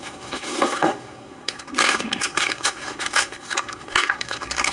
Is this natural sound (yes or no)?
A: no